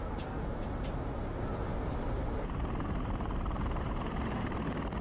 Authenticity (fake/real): fake